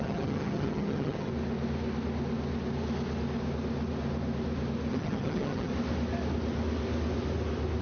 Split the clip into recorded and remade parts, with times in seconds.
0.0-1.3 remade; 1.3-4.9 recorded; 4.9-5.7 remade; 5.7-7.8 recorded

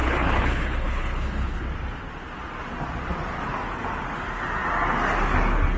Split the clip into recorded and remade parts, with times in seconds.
0.0-1.6 remade; 1.6-5.8 recorded